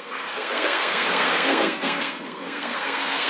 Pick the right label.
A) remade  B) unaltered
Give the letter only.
A